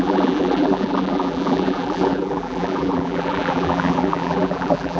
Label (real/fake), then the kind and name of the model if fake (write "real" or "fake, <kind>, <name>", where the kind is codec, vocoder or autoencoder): fake, vocoder, BigVGAN v2